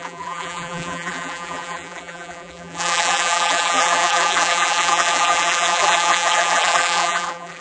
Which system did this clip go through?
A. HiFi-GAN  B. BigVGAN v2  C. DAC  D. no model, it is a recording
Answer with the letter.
B